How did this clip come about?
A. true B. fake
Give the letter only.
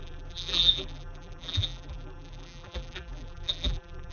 B